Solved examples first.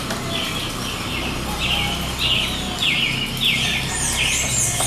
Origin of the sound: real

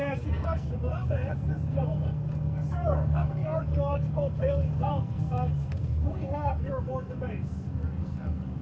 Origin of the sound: fake